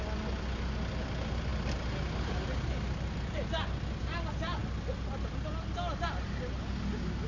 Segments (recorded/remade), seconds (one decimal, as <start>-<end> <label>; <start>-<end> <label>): 0.0-7.3 recorded